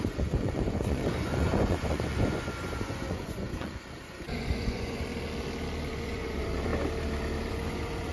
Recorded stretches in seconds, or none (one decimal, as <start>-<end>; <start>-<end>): 5.1-5.9; 6.7-7.5